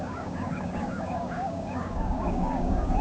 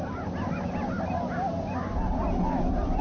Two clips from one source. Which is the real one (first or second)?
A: second